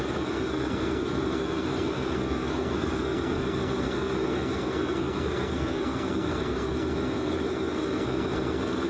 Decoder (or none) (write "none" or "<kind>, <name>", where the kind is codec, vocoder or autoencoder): codec, SNAC